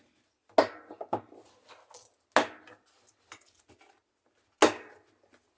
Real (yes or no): yes